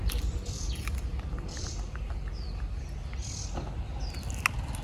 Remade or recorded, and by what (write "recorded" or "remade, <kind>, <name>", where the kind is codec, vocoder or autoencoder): recorded